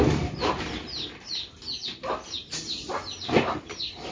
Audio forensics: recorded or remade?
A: recorded